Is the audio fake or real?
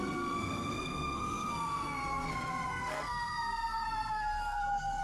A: fake